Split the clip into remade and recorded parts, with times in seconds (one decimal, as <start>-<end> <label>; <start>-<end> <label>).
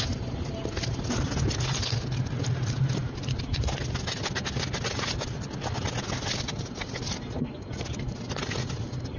0.0-9.2 recorded